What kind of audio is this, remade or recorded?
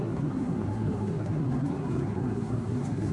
remade